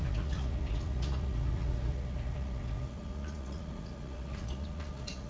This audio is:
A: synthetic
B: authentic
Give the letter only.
A